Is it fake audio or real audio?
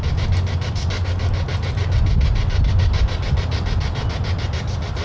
real